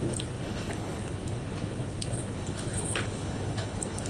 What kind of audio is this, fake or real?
fake